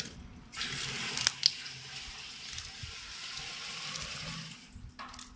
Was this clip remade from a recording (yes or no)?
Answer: no